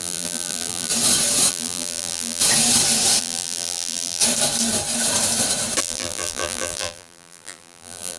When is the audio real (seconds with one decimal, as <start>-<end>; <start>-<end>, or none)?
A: 0.9-1.5; 2.4-3.2; 4.2-5.8